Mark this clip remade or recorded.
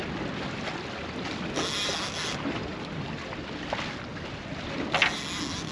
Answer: recorded